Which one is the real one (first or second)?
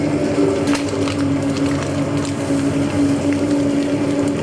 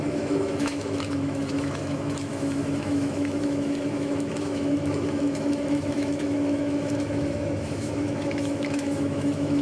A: first